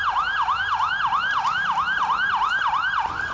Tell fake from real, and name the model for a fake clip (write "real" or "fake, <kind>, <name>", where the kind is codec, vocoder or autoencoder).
real